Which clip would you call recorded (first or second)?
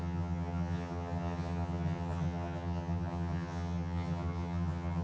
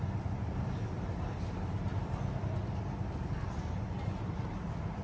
second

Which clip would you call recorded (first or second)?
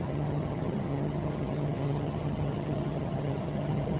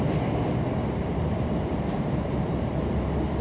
second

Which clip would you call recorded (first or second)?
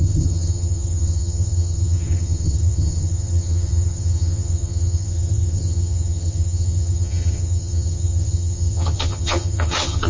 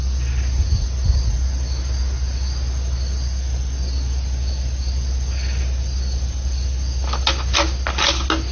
second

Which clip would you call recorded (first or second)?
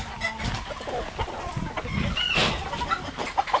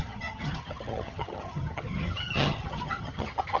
first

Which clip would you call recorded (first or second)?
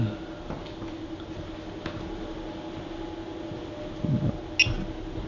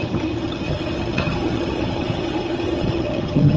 first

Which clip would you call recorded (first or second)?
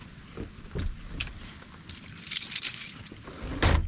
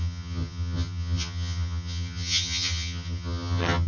first